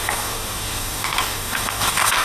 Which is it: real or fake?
fake